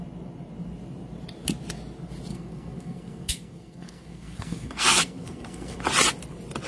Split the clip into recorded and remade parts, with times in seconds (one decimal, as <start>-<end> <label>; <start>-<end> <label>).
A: 0.0-2.3 recorded; 2.3-5.8 remade; 5.8-6.7 recorded